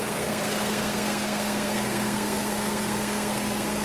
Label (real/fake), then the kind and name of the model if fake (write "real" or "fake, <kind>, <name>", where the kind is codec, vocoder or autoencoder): fake, codec, SNAC